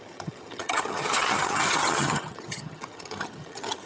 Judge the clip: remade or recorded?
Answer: remade